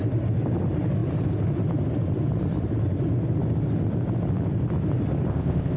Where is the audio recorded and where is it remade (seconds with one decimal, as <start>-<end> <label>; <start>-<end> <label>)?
0.0-5.3 recorded; 5.3-5.8 remade

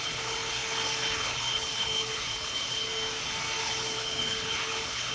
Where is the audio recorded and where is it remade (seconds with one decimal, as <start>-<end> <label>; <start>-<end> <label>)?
0.0-2.9 remade; 2.9-3.6 recorded; 3.6-5.1 remade

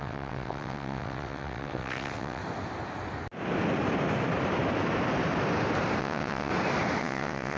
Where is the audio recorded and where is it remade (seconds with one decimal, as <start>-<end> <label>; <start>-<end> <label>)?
0.0-2.4 remade; 2.4-6.0 recorded; 6.0-6.5 remade; 6.5-7.0 recorded; 7.0-7.6 remade

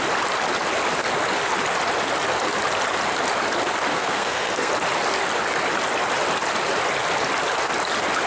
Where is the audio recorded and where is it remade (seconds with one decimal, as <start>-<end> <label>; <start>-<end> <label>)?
0.0-3.9 recorded; 3.9-4.7 remade; 4.7-8.3 recorded

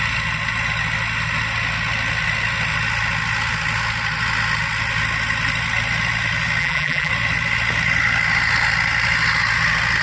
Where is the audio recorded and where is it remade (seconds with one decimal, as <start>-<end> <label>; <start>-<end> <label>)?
0.0-6.6 recorded; 6.6-7.1 remade; 7.1-10.0 recorded